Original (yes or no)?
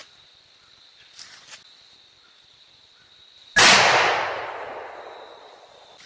yes